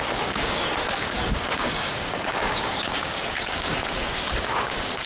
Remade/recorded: remade